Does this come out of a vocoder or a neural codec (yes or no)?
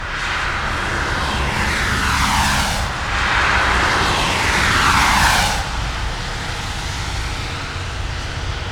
no